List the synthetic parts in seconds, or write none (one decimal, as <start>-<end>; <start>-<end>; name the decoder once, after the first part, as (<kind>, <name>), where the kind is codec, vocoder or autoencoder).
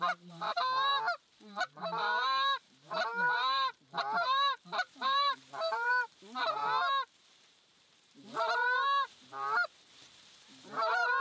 0.0-0.9 (vocoder, BigVGAN v2); 1.6-6.6; 7.2-11.2